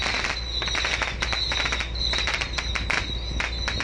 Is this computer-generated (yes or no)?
no